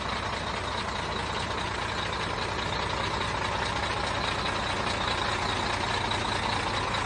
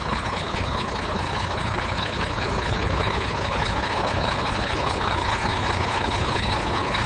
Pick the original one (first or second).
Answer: first